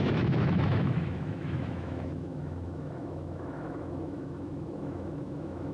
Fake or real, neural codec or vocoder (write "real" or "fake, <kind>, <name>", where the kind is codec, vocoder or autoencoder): fake, autoencoder, DAC-VAE